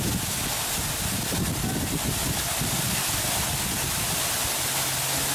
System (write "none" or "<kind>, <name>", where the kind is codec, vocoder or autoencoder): none